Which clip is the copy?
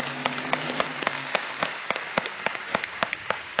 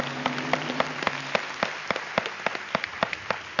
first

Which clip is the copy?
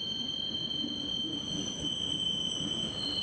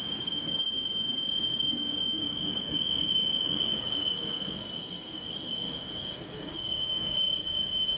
second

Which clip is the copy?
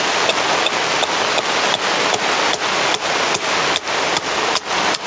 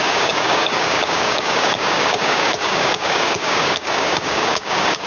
second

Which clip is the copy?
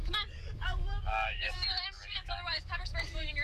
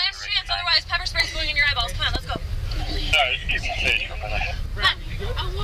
first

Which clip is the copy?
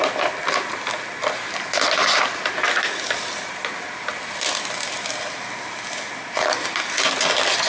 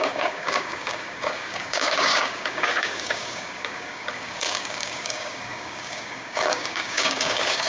second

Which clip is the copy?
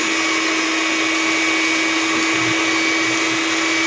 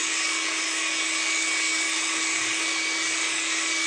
second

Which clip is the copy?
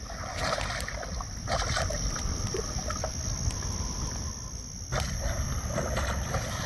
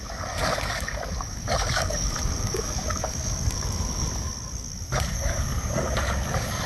second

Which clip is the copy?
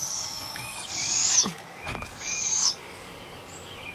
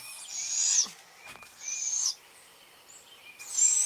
first